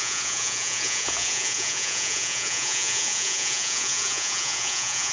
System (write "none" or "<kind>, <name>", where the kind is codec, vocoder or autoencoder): vocoder, Vocos